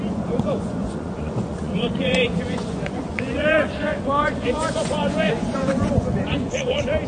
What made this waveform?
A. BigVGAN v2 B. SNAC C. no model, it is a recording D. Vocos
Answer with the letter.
D